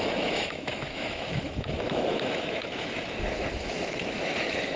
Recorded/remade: remade